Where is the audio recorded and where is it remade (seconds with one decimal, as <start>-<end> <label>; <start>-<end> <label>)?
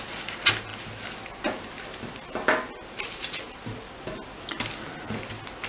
0.0-5.7 recorded